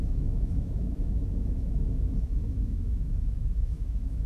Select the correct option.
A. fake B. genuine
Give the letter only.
A